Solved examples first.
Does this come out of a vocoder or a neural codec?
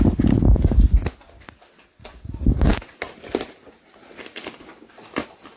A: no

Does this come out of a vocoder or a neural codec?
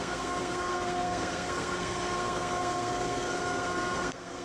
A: yes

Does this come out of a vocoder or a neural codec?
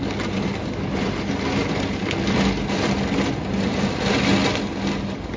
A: no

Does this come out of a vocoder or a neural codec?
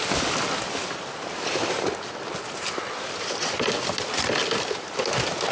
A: no